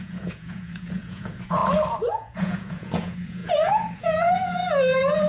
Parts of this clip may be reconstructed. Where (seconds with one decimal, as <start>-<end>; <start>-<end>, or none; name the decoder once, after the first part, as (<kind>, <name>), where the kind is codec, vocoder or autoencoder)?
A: 0.0-1.6 (vocoder, Vocos); 2.1-5.3